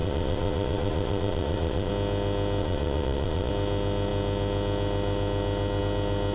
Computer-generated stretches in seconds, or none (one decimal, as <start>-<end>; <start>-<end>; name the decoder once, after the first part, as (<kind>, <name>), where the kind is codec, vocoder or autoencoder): 0.0-1.9 (vocoder, Vocos); 2.6-3.5